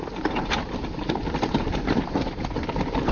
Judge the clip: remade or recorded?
remade